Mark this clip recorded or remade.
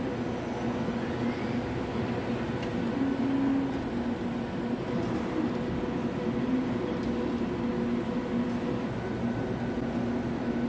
recorded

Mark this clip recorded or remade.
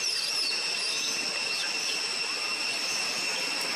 recorded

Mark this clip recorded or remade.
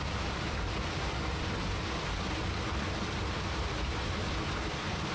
recorded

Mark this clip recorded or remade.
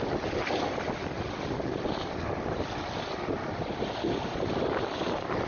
recorded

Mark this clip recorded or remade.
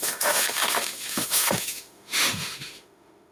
remade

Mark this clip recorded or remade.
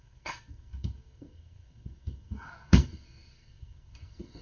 remade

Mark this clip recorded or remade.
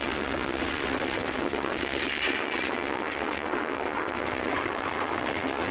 remade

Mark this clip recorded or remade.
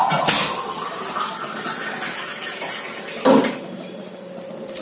recorded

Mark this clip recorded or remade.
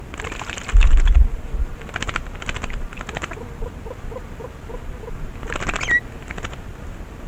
recorded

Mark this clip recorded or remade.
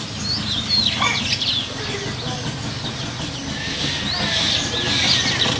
recorded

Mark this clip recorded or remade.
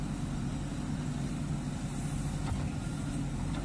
recorded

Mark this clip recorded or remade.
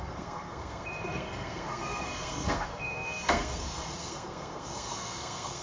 remade